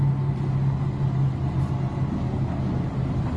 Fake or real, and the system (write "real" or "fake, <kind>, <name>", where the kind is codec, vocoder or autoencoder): real